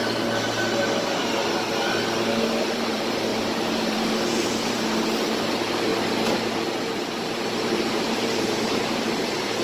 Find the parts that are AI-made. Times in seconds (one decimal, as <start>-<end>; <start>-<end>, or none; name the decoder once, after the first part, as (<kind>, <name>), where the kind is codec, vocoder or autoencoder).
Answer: 2.6-5.9 (vocoder, BigVGAN v2); 7.2-9.6